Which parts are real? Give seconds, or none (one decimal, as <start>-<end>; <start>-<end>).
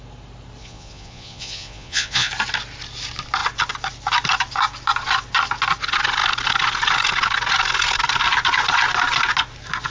0.0-0.6; 2.3-9.9